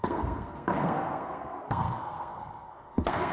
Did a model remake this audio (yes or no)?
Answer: yes